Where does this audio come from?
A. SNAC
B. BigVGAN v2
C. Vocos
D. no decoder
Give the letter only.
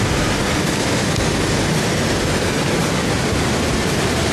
D